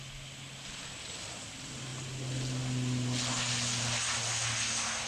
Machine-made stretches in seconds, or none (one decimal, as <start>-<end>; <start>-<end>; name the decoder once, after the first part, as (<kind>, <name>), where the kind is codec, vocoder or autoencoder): none